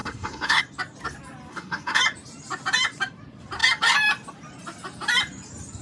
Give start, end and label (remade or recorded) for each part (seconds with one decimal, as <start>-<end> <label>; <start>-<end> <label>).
0.0-0.6 remade; 0.6-1.5 recorded; 1.5-2.0 remade; 2.0-5.8 recorded